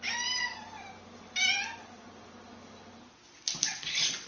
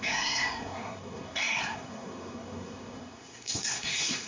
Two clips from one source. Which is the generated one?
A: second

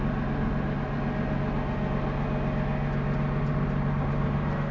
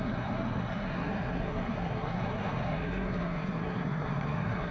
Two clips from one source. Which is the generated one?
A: second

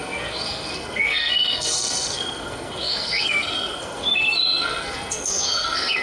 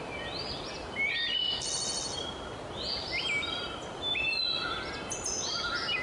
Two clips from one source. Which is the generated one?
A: first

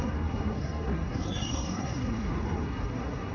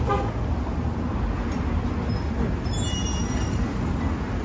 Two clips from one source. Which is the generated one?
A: first